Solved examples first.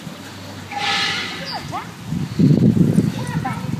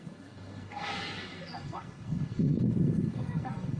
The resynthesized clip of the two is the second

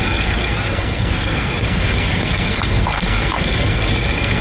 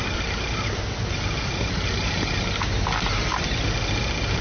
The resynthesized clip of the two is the first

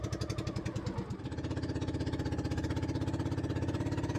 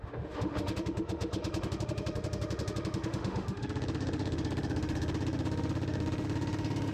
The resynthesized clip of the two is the second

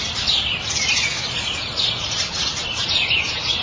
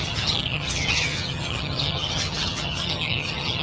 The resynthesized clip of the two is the second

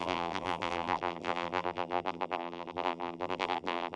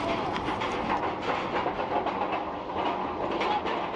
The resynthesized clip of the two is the first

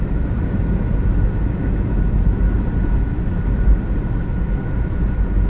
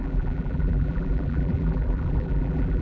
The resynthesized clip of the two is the second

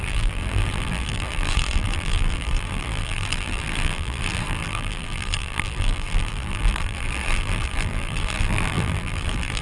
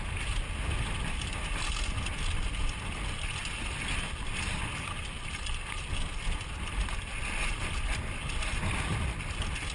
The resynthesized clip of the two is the first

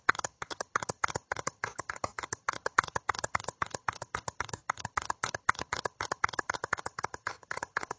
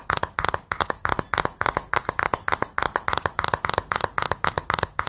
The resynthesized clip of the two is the first